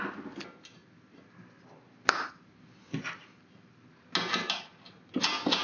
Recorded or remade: recorded